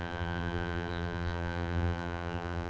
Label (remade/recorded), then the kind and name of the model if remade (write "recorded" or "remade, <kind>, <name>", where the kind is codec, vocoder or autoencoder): remade, vocoder, BigVGAN v2